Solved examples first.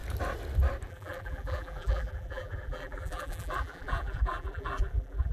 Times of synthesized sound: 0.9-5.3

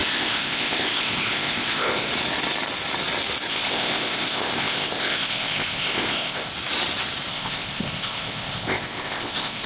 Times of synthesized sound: 0.0-2.1; 3.5-6.5; 7.3-9.7